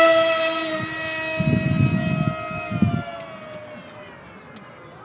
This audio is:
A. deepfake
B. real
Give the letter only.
B